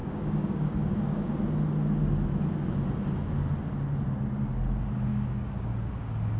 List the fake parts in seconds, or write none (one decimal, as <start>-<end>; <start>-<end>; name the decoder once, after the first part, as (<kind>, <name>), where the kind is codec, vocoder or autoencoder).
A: 0.0-1.3 (codec, DAC); 5.1-5.9